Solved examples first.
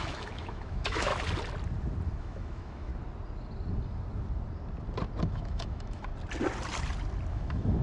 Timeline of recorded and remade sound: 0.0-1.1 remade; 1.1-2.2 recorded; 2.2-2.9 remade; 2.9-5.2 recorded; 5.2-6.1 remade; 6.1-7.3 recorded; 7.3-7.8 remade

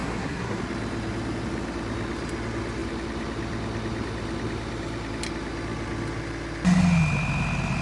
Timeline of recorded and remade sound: 0.0-0.6 remade; 0.6-7.8 recorded

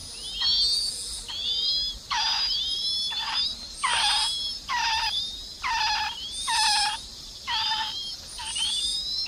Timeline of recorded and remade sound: 0.0-9.3 recorded

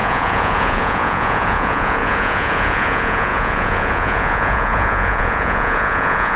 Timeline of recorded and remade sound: 0.0-6.4 remade

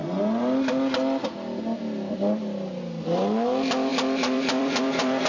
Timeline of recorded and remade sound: 0.0-3.9 recorded; 3.9-5.3 remade

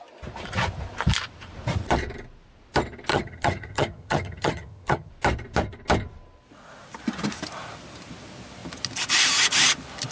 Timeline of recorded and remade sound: 0.0-3.1 recorded; 3.1-5.1 remade; 5.1-10.1 recorded

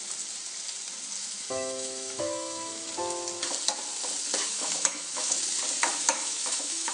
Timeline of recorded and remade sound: 0.0-1.2 recorded; 1.2-2.9 remade; 2.9-4.5 recorded; 4.5-5.4 remade; 5.4-5.9 recorded; 5.9-6.9 remade